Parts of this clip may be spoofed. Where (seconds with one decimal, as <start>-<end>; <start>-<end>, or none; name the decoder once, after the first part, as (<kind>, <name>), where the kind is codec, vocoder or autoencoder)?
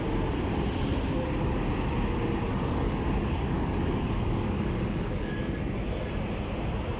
2.5-5.7 (codec, DAC)